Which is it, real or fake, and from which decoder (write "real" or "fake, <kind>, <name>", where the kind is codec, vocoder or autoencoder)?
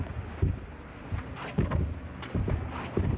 real